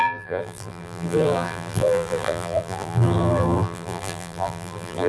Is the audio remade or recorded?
remade